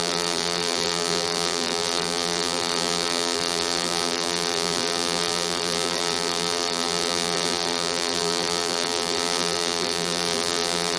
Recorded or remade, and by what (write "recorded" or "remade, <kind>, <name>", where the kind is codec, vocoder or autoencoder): remade, vocoder, BigVGAN v2